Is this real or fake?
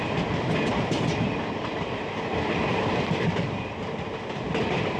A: real